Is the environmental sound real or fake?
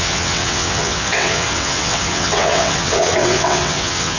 fake